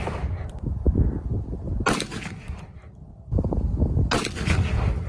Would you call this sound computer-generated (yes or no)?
no